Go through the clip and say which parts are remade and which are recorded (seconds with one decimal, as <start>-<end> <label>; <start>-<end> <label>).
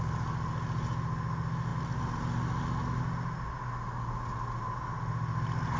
0.0-5.8 recorded